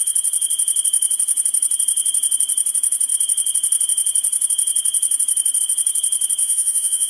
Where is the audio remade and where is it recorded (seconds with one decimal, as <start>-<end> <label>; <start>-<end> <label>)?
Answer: 0.0-6.4 recorded; 6.4-7.1 remade